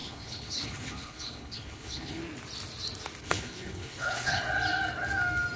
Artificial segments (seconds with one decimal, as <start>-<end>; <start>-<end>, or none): 0.0-2.2; 3.2-4.4